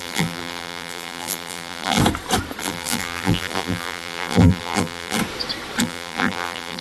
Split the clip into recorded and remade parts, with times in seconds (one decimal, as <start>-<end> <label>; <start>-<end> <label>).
0.0-2.0 remade; 2.0-2.6 recorded; 2.6-5.2 remade; 5.2-5.8 recorded; 5.8-6.8 remade